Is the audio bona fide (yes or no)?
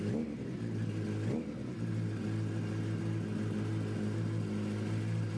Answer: yes